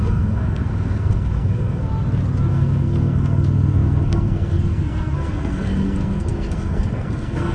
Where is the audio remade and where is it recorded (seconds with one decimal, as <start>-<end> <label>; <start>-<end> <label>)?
0.0-1.9 remade; 1.9-2.5 recorded; 2.5-7.5 remade